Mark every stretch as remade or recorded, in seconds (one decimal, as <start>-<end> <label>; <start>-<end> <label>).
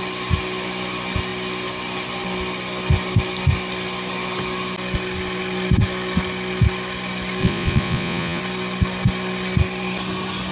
0.0-7.4 recorded; 7.4-8.4 remade; 8.4-10.5 recorded